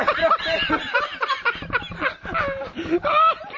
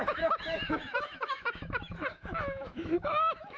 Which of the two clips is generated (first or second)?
second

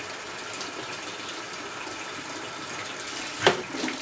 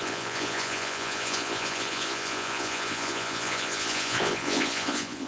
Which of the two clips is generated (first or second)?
second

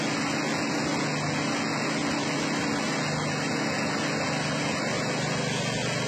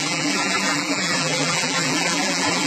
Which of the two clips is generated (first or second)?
second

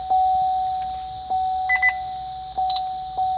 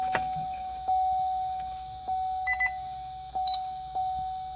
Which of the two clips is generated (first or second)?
second